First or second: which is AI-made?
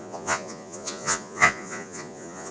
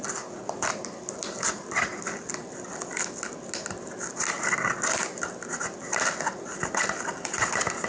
first